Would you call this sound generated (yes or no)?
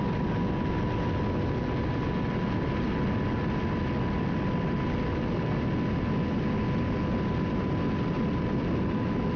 no